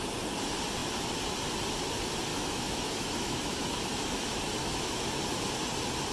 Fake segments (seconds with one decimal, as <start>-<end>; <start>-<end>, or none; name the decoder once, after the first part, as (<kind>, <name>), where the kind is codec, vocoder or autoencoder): 2.3-5.2 (autoencoder, DAC-VAE)